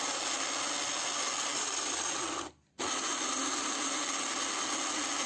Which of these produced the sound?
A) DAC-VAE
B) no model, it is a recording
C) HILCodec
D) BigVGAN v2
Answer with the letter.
B